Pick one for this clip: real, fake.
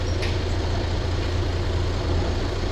real